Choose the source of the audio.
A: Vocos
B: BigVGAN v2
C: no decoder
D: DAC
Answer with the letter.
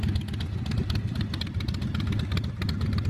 C